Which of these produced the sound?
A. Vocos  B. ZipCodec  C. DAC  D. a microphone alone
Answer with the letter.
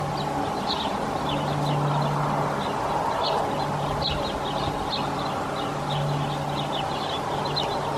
D